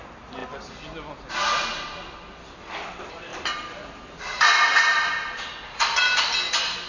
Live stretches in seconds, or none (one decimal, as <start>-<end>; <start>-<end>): 0.0-6.9